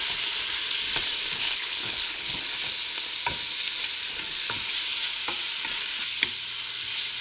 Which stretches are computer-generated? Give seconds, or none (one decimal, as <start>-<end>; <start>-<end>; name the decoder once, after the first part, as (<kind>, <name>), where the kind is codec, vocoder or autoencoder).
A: 1.3-2.4 (codec, HILCodec)

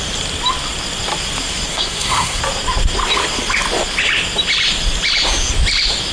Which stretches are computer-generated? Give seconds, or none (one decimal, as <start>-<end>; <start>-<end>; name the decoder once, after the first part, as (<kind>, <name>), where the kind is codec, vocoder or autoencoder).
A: 1.7-2.4 (codec, SNAC)

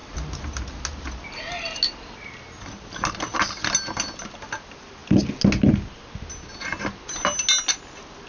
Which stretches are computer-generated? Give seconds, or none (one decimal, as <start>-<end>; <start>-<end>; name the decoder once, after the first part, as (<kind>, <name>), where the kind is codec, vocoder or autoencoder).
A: none

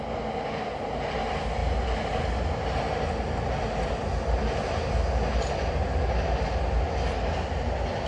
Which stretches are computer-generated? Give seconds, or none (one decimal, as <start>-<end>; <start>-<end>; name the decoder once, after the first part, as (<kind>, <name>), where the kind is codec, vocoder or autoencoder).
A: none

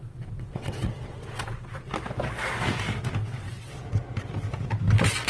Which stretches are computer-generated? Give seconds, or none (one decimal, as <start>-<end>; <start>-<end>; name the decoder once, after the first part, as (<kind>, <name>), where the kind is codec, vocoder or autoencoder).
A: 0.0-1.9 (vocoder, WaveNeXt); 3.2-3.7